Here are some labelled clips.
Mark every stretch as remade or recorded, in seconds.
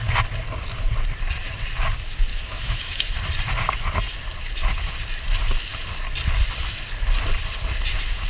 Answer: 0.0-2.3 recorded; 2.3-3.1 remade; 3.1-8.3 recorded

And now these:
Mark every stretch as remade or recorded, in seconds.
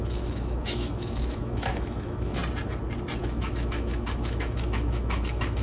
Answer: 0.0-2.4 remade; 2.4-3.2 recorded; 3.2-5.6 remade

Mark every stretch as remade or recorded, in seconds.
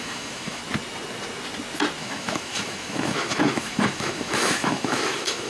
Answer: 0.0-0.6 remade; 0.6-2.0 recorded; 2.0-5.5 remade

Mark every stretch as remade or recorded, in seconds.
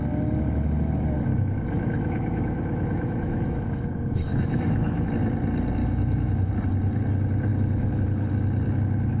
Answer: 0.0-1.3 recorded; 1.3-5.1 remade; 5.1-5.8 recorded; 5.8-6.5 remade; 6.5-7.5 recorded; 7.5-8.3 remade; 8.3-9.2 recorded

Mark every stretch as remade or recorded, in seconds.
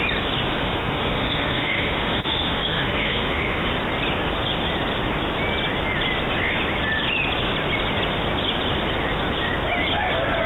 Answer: 0.0-0.5 recorded; 0.5-3.7 remade; 3.7-10.5 recorded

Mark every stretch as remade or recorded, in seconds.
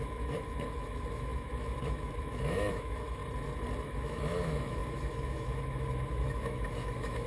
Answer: 0.0-3.2 remade; 3.2-3.8 recorded; 3.8-7.3 remade